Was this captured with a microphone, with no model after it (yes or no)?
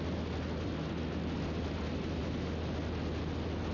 yes